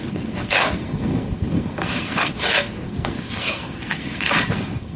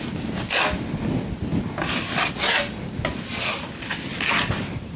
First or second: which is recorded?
second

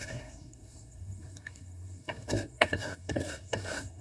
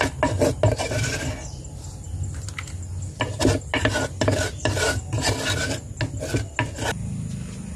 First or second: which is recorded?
second